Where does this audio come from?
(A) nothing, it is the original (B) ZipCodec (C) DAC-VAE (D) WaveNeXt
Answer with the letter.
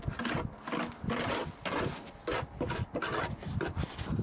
A